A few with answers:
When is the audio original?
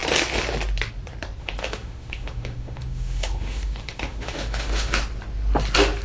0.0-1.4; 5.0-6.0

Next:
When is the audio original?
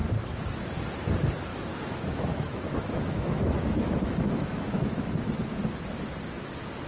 0.0-1.5; 5.1-6.9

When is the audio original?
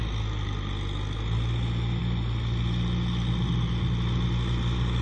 0.0-5.0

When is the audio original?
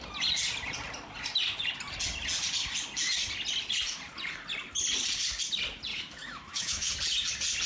0.0-5.9; 6.9-7.7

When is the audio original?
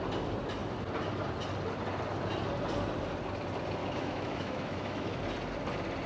0.0-3.8; 5.2-6.1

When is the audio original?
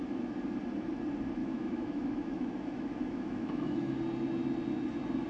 0.0-1.4; 4.0-5.3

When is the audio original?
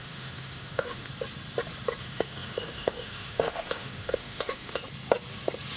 1.1-2.0; 4.8-5.8